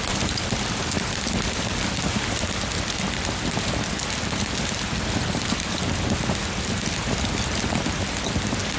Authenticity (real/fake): real